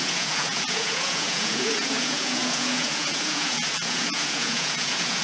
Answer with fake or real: fake